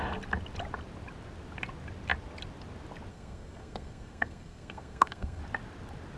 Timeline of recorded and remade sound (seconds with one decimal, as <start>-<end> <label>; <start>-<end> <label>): 0.0-3.1 recorded; 3.1-5.4 remade; 5.4-6.2 recorded